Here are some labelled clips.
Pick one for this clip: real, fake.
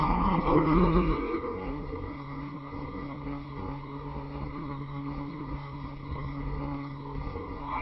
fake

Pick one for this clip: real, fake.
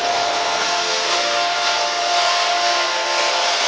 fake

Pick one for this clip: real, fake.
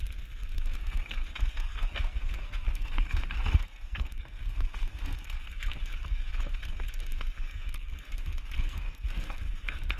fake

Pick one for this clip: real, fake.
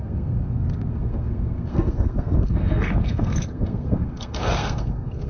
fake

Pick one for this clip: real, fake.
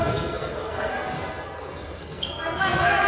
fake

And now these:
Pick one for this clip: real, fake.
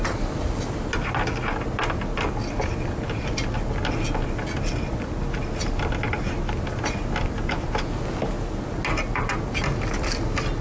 real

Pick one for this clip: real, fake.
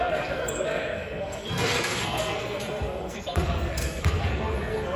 fake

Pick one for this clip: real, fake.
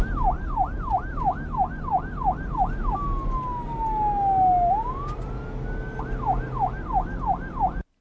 real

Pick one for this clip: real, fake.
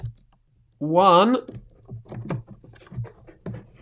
real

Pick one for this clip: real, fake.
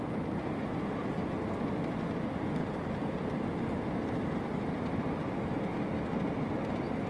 real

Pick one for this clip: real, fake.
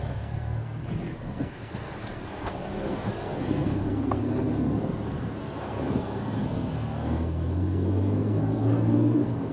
fake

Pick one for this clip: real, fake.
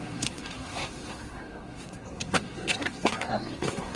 fake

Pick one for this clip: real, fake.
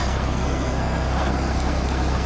fake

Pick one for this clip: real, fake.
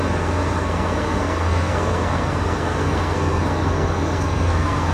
fake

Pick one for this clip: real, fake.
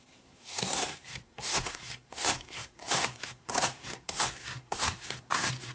fake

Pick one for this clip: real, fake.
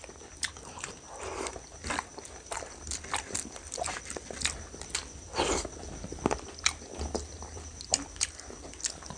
real